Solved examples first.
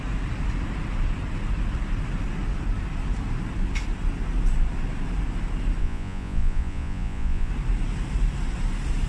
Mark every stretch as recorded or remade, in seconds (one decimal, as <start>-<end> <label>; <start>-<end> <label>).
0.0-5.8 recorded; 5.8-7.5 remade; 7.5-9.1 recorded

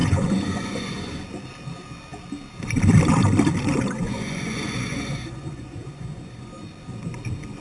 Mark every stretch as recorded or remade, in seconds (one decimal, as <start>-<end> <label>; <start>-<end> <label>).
0.0-1.1 remade; 1.1-4.0 recorded; 4.0-6.5 remade; 6.5-7.6 recorded

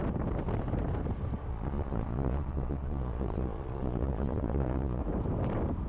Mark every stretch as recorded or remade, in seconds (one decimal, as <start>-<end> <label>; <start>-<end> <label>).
0.0-1.5 recorded; 1.5-5.0 remade; 5.0-5.9 recorded

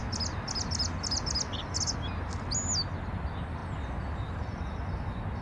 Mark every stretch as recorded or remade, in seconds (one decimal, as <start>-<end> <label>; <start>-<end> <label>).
0.0-5.4 recorded

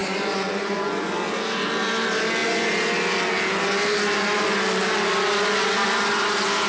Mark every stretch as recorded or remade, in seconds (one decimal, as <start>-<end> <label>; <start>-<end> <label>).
0.0-1.1 remade; 1.1-6.7 recorded

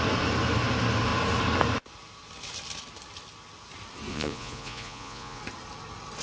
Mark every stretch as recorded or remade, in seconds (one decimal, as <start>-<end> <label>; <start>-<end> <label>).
0.0-4.1 recorded; 4.1-5.4 remade; 5.4-6.2 recorded

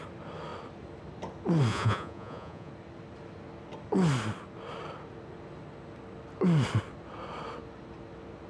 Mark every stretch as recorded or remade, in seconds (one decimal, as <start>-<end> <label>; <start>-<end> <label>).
0.0-1.7 recorded; 1.7-2.7 remade; 2.7-8.5 recorded

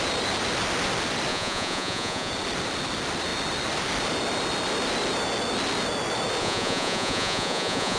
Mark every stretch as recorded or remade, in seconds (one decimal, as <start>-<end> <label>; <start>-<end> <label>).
0.0-1.3 recorded; 1.3-2.3 remade; 2.3-6.4 recorded; 6.4-8.0 remade